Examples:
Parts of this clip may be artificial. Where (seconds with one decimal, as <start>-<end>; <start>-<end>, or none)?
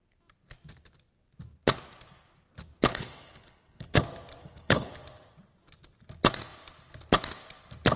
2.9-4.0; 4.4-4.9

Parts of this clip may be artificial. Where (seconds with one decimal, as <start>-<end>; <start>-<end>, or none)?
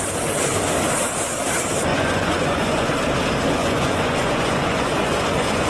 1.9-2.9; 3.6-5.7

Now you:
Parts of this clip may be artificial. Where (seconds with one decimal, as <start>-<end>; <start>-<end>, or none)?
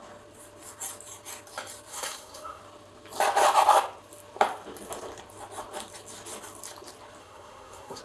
1.9-2.6; 7.2-8.0